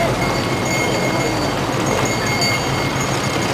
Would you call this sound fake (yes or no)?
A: no